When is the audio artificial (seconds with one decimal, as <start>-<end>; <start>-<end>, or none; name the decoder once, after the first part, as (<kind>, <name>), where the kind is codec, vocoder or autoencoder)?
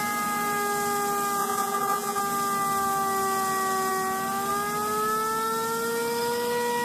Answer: 1.4-2.2 (vocoder, Vocos)